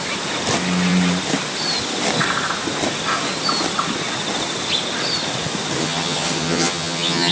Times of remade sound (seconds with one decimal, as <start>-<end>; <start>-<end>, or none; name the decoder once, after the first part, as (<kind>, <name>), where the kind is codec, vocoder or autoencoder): 5.8-7.3 (vocoder, HiFi-GAN)